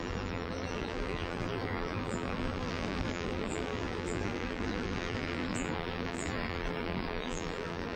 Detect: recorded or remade remade